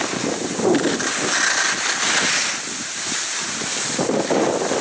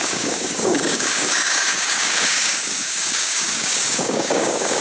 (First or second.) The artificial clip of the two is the second